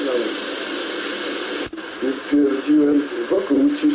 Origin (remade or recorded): recorded